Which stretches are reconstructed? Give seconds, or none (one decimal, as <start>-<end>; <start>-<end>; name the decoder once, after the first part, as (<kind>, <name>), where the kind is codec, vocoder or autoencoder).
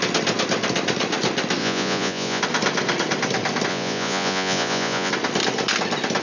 1.6-2.4 (vocoder, Vocos); 3.7-5.1